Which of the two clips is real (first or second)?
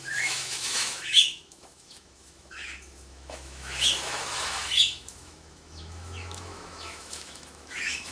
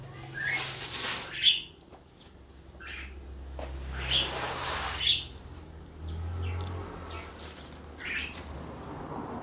second